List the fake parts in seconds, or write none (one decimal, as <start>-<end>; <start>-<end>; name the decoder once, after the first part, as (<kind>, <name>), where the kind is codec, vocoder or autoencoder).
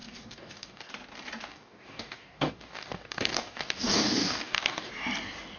0.0-0.9 (codec, DAC); 1.5-4.9